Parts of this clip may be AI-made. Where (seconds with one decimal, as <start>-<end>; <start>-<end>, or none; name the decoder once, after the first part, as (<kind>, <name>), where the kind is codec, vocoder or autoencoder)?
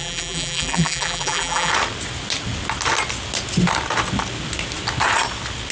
0.0-1.7 (vocoder, BigVGAN v2)